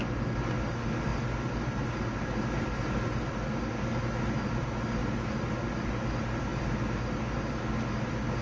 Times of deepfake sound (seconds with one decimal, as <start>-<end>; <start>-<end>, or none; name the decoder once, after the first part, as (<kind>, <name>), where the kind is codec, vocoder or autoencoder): 1.1-3.7 (vocoder, BigVGAN v2)